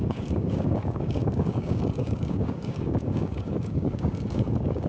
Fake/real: fake